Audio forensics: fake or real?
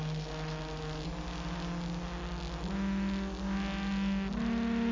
real